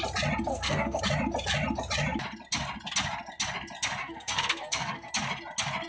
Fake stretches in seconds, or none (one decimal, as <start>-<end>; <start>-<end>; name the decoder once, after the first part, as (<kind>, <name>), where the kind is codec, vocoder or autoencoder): 0.5-1.0 (codec, SNAC); 4.0-5.1